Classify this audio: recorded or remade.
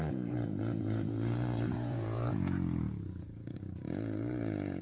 remade